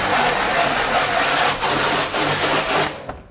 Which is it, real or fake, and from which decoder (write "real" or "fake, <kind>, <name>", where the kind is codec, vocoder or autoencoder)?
real